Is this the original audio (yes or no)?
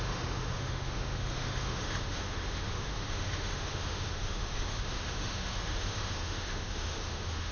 no